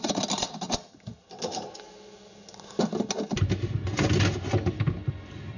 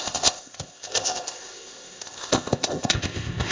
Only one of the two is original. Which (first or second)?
first